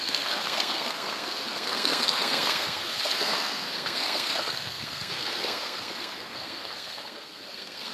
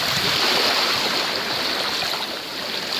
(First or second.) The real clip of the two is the second